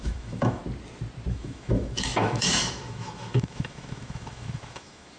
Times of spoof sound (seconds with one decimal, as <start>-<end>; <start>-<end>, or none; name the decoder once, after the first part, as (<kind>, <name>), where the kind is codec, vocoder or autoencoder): 0.0-0.6 (autoencoder, DAC-VAE); 1.3-5.2